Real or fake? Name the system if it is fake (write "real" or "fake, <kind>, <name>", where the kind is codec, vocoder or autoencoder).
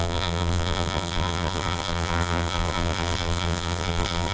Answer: fake, vocoder, BigVGAN v2